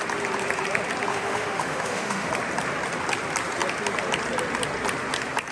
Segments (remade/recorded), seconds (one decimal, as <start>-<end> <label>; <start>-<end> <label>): 0.0-1.1 recorded; 1.1-2.3 remade; 2.3-5.5 recorded